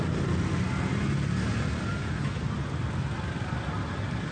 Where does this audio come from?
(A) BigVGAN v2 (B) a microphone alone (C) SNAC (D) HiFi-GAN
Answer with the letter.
B